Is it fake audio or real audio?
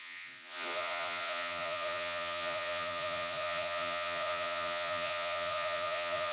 fake